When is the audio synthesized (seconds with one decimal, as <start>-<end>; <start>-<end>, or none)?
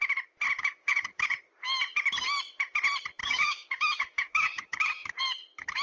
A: 0.6-1.5; 3.2-5.2